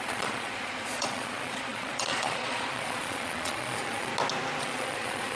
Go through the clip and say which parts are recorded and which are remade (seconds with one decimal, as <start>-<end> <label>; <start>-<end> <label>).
0.0-4.1 remade; 4.1-4.6 recorded; 4.6-5.4 remade